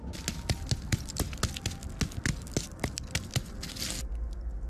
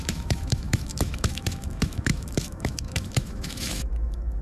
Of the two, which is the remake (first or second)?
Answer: second